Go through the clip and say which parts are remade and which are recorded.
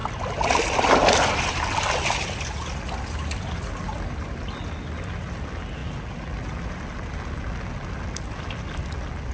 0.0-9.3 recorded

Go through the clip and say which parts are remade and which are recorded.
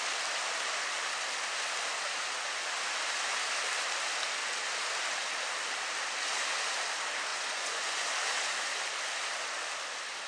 0.0-7.3 recorded; 7.3-8.1 remade; 8.1-10.3 recorded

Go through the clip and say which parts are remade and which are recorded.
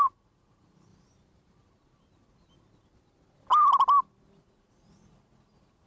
0.0-0.9 remade; 0.9-4.4 recorded; 4.4-5.9 remade